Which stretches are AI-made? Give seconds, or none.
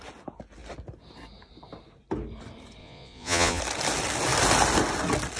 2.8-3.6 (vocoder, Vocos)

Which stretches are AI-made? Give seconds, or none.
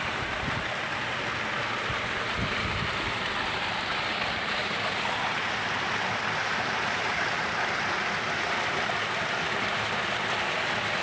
6.4-7.6 (vocoder, BigVGAN v2)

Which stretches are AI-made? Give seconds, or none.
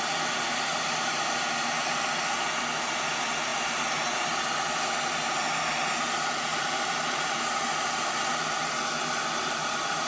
0.7-1.3 (vocoder, BigVGAN v2); 3.5-4.9; 6.5-7.7; 9.2-10.1